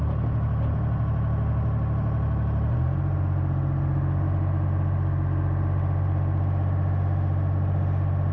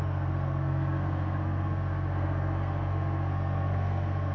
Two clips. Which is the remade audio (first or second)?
second